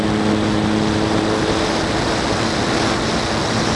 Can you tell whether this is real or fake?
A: real